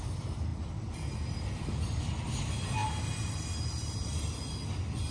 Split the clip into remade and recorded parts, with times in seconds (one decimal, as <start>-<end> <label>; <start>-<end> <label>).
0.0-5.1 recorded